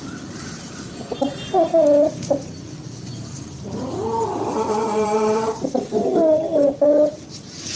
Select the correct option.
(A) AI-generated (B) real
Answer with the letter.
A